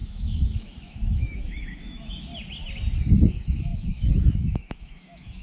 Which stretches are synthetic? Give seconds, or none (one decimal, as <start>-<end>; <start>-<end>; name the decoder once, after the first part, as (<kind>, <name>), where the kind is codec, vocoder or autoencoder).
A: 0.0-2.3 (autoencoder, DAC-VAE); 3.1-5.4